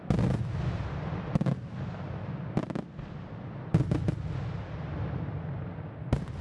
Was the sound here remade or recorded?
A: recorded